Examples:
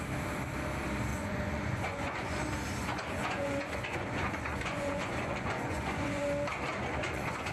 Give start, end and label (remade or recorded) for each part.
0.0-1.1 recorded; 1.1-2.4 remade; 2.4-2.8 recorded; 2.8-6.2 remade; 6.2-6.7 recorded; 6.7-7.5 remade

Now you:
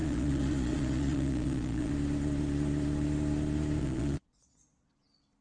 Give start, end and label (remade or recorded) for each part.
0.0-1.9 remade; 1.9-3.8 recorded; 3.8-4.9 remade; 4.9-5.4 recorded